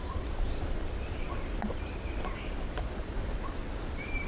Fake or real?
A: fake